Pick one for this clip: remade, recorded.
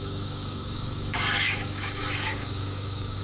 remade